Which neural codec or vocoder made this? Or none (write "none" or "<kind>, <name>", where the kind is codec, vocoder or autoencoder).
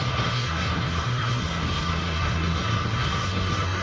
codec, SNAC